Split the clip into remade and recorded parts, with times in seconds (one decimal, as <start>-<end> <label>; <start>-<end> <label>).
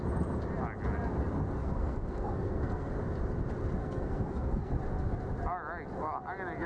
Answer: 0.0-1.6 recorded; 1.6-2.9 remade; 2.9-3.8 recorded; 3.8-4.8 remade; 4.8-6.7 recorded